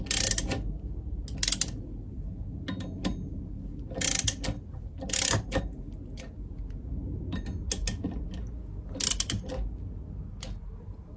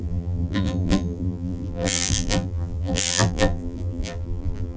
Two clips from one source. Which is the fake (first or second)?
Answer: second